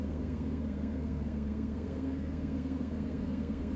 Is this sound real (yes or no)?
no